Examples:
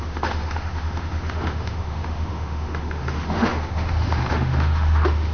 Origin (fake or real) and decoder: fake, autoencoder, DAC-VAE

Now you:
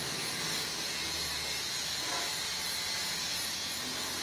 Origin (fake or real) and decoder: real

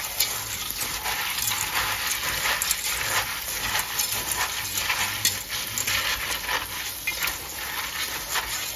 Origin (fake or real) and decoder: real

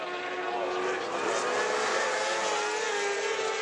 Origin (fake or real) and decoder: real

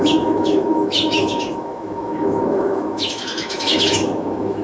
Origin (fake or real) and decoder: fake, autoencoder, DAC-VAE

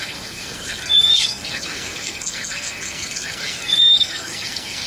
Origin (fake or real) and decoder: fake, codec, SNAC